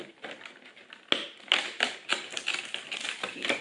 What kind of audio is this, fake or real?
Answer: real